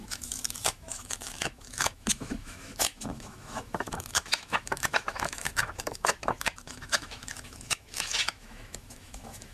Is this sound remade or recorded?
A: remade